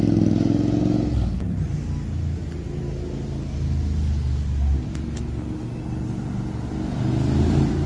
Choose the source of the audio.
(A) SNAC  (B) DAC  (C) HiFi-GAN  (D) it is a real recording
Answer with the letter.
D